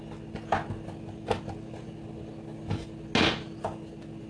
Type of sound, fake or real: real